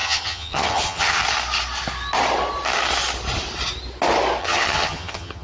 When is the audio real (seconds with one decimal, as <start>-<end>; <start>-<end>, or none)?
1.2-4.4